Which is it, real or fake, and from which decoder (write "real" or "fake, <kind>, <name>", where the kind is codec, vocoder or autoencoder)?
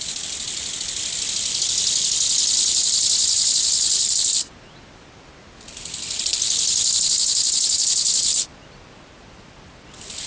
real